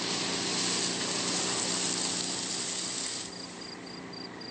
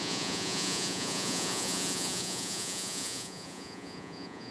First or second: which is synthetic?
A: second